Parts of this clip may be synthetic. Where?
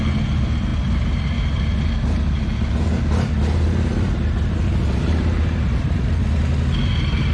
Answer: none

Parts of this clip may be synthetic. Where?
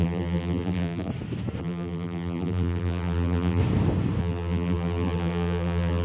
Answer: 0.0-1.1 (vocoder, BigVGAN v2); 1.6-3.6; 4.2-6.0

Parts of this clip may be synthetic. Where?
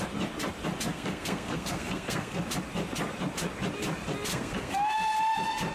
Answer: 0.9-2.4 (codec, SNAC); 4.3-5.2